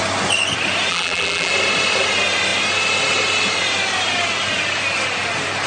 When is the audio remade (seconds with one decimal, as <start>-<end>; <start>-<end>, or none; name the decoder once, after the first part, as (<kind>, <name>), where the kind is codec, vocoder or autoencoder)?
0.9-1.5 (vocoder, BigVGAN v2)